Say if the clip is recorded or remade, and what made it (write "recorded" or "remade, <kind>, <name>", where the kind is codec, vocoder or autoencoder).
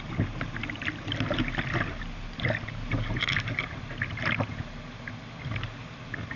recorded